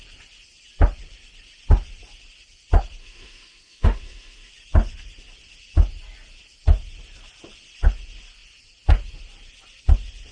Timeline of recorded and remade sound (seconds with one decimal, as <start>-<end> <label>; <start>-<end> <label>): 0.0-3.0 recorded; 3.0-4.5 remade; 4.5-10.3 recorded

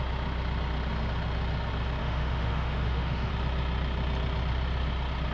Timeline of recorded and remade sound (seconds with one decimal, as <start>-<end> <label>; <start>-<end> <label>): 0.0-2.0 recorded; 2.0-3.3 remade; 3.3-5.3 recorded

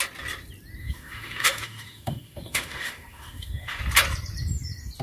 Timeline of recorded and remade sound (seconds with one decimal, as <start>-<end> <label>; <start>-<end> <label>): 0.0-0.8 recorded; 0.8-3.8 remade; 3.8-5.0 recorded

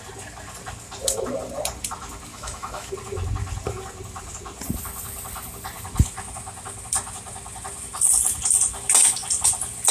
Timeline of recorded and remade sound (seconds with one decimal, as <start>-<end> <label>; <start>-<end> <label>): 0.0-2.3 recorded; 2.3-2.9 remade; 2.9-9.9 recorded

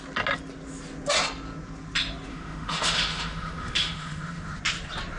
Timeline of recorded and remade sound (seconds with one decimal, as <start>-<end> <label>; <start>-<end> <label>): 0.0-2.3 recorded; 2.3-4.6 remade; 4.6-5.2 recorded

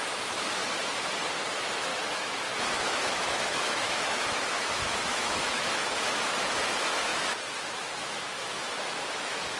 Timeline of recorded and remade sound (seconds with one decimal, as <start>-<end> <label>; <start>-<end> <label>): 0.0-0.6 remade; 0.6-1.5 recorded; 1.5-9.6 remade

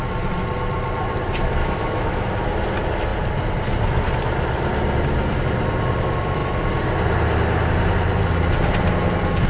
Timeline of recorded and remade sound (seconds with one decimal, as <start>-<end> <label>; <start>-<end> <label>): 0.0-1.6 recorded; 1.6-2.3 remade; 2.3-9.5 recorded

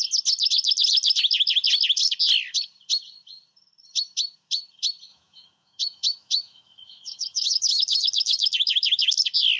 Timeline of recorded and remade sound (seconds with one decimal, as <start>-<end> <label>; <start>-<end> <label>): 0.0-5.1 recorded; 5.1-9.1 remade; 9.1-9.6 recorded